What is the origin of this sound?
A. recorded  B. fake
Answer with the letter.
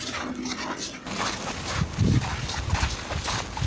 A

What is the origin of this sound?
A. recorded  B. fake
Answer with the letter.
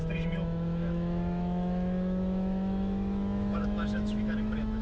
B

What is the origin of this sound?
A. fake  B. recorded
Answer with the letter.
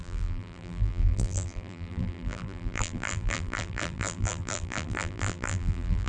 A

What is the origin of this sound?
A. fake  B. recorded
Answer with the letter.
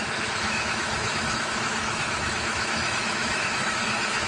A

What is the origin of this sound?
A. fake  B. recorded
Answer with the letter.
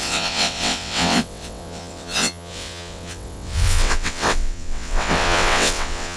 A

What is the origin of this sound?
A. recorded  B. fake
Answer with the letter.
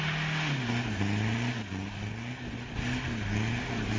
A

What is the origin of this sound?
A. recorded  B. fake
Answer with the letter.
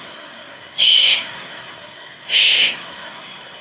B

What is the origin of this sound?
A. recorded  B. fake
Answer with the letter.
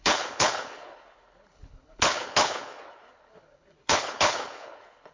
B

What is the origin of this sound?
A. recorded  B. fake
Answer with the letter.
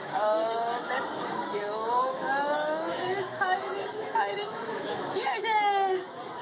B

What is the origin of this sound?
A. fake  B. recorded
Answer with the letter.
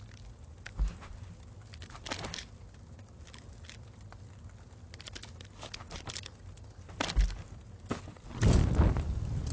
B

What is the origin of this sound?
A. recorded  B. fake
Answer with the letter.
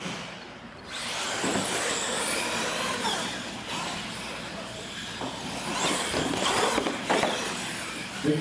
A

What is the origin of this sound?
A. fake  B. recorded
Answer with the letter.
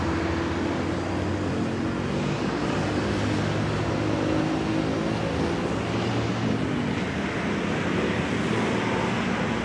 B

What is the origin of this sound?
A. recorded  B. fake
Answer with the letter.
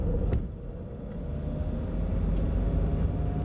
A